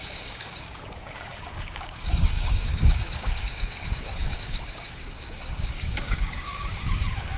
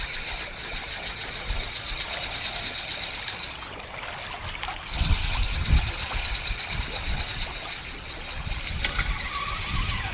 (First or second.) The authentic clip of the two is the second